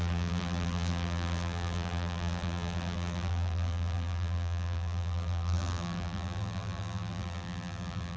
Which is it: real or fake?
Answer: fake